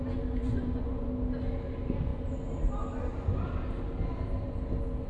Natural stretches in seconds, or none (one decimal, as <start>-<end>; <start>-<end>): 0.0-0.4; 1.1-5.1